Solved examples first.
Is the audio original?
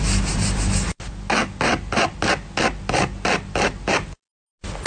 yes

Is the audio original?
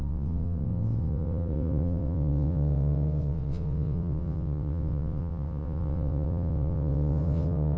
no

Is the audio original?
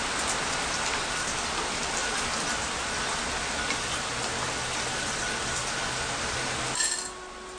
yes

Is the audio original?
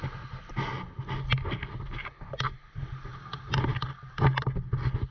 yes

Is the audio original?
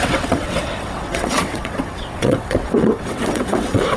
no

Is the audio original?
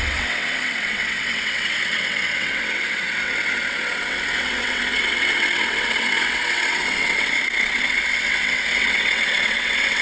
no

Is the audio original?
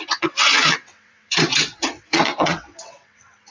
no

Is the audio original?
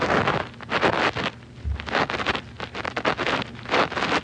yes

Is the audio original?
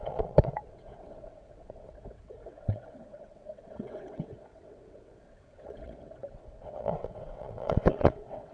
no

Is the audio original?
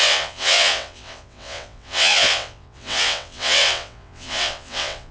no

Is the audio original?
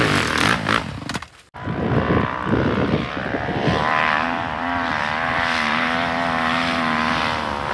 yes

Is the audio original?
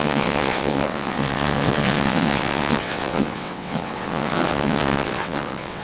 no